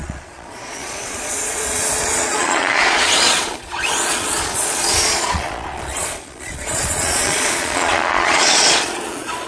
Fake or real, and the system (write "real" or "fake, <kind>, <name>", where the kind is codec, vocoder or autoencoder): fake, vocoder, Vocos